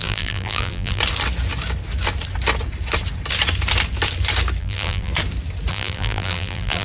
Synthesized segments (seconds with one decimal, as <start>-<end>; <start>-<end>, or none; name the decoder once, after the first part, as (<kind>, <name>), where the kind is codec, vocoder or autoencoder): 0.0-1.0 (vocoder, BigVGAN v2); 4.6-5.1; 5.7-6.8